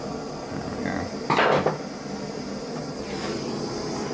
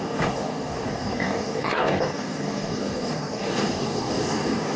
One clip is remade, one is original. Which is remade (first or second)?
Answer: second